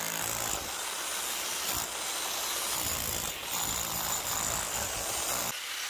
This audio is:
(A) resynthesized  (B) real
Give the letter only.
B